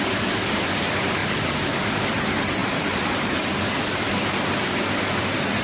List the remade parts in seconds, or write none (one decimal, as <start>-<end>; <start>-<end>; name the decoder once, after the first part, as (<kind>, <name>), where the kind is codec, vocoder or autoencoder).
1.2-2.2 (vocoder, BigVGAN v2); 2.6-3.5